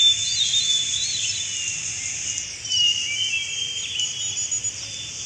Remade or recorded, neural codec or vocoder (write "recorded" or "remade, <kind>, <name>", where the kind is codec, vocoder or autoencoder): recorded